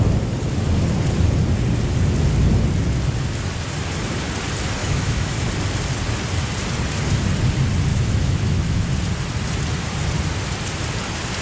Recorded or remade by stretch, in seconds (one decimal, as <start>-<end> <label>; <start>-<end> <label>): 0.0-4.8 recorded; 4.8-5.5 remade; 5.5-7.9 recorded; 7.9-8.9 remade; 8.9-11.4 recorded